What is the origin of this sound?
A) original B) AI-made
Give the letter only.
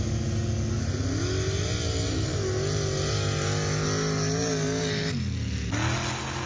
A